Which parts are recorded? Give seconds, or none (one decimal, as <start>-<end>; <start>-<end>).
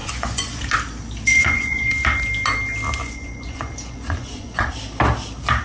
0.6-1.3; 1.9-3.0; 4.7-5.6